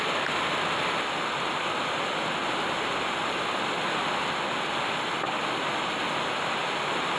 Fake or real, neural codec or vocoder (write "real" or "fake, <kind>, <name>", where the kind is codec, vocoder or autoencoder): real